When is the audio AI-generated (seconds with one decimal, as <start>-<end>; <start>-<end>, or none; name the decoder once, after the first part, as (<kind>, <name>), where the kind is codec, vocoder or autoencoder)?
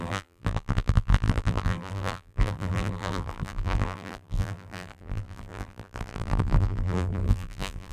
0.0-7.9 (vocoder, BigVGAN v2)